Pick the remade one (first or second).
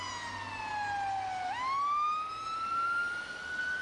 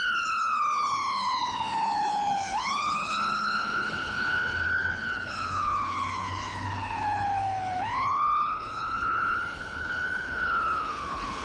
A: second